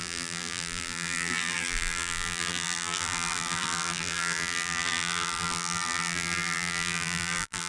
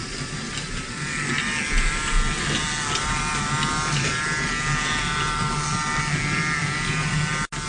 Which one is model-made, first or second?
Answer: first